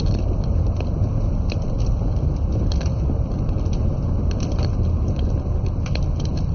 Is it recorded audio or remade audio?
recorded